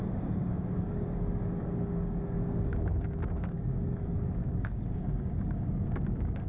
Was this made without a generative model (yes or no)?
no